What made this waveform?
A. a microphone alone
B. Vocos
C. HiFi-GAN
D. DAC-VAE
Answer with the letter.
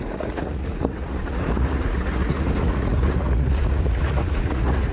B